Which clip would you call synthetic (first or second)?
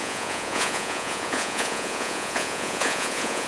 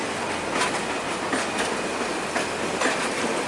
first